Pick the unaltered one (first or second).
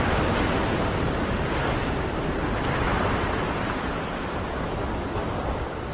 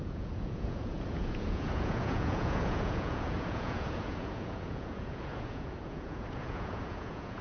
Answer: first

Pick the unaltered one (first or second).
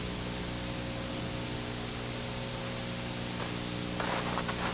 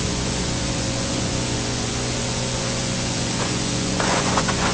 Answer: first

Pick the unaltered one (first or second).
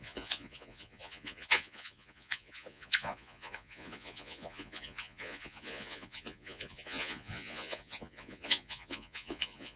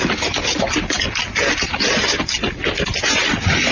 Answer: second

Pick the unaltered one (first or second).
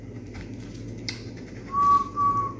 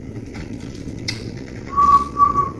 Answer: first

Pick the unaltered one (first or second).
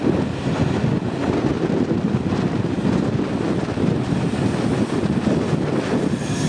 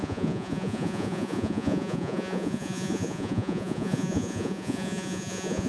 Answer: first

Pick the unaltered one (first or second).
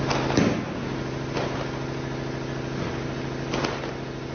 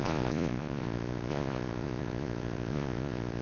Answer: first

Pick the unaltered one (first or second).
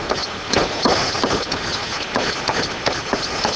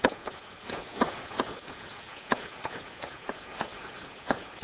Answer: first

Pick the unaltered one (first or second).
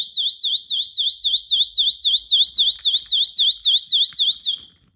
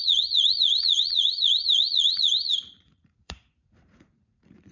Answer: first